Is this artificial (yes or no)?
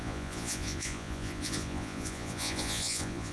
yes